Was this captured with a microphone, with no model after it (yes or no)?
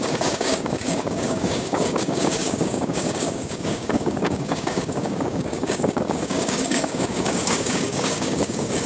no